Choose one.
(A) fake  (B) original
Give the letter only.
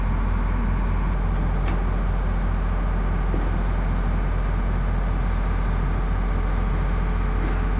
B